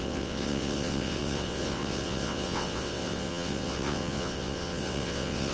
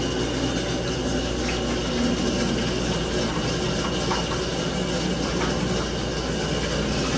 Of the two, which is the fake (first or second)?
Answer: first